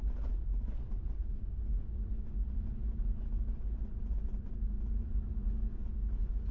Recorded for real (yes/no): yes